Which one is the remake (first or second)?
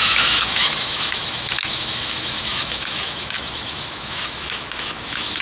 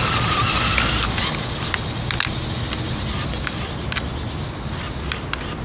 first